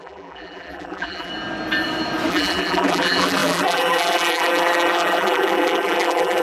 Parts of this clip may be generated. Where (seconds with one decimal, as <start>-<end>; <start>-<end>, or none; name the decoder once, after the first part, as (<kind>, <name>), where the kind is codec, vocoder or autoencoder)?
0.0-1.3 (vocoder, BigVGAN v2); 2.3-6.4